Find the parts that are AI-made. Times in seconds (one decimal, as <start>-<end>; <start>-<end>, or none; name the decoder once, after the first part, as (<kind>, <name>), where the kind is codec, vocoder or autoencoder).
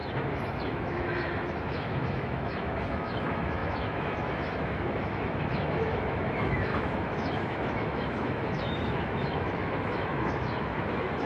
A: 0.0-11.3 (autoencoder, DAC-VAE)